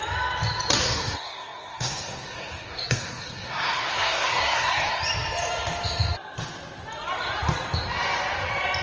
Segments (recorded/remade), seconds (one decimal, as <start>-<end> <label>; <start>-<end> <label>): 0.0-0.8 recorded; 0.8-5.0 remade; 5.0-8.8 recorded